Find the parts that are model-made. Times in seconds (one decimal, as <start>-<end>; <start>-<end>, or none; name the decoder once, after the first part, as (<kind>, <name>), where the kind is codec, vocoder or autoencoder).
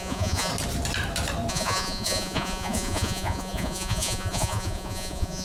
0.0-0.5 (vocoder, Vocos); 1.5-5.4